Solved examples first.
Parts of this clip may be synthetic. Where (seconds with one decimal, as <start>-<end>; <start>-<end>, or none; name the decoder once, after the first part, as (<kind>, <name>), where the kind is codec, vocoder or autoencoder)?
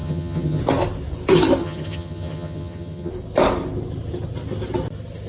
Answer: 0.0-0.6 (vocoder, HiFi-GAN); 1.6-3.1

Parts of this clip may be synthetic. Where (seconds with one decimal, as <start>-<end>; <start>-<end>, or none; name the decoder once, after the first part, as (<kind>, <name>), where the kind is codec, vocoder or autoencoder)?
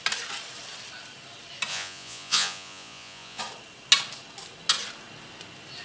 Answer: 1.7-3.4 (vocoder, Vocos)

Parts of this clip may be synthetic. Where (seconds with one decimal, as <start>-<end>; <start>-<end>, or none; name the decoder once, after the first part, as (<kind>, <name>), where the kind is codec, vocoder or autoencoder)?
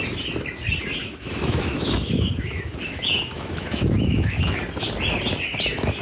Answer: 1.0-4.6 (autoencoder, DAC-VAE)